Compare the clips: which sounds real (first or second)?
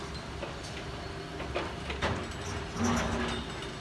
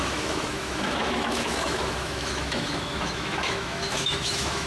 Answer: first